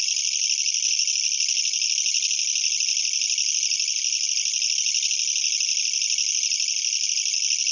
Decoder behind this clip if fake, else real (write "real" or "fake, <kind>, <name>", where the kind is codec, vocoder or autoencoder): real